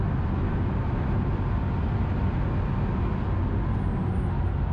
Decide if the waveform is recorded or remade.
recorded